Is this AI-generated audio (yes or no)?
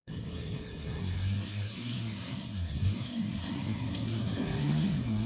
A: yes